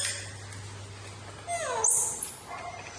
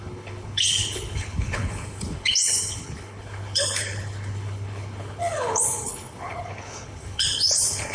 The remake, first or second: second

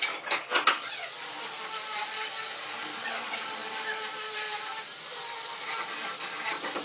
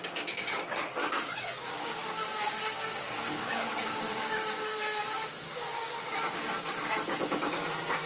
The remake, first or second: second